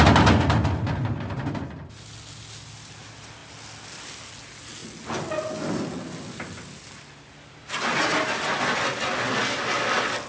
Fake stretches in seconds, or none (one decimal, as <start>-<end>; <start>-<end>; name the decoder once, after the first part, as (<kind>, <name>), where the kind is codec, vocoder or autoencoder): none

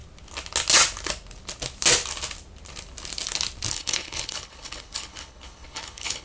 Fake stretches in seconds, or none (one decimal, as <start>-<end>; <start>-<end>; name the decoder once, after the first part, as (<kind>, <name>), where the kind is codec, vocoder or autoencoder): 3.7-6.2 (codec, HILCodec)